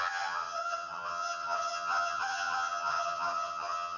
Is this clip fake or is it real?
fake